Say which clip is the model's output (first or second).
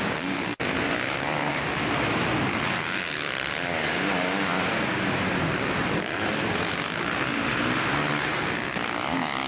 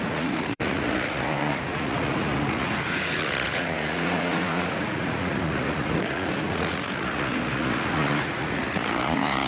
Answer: second